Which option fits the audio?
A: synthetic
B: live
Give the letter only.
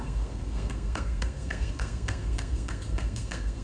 A